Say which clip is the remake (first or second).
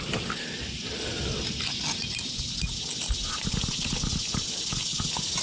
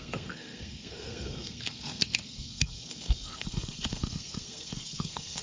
second